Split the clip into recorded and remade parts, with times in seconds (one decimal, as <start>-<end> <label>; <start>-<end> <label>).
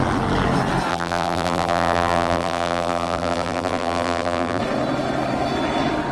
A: 0.0-0.9 recorded; 0.9-4.6 remade; 4.6-6.1 recorded